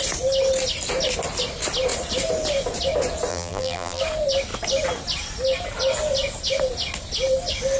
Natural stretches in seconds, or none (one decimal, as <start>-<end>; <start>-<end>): 0.0-3.3; 4.0-7.8